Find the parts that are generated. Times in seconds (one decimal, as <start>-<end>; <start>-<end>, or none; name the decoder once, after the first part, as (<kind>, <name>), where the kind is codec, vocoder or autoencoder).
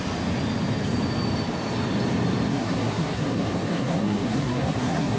2.5-5.2 (codec, SNAC)